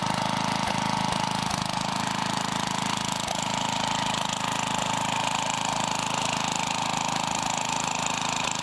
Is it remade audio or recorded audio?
recorded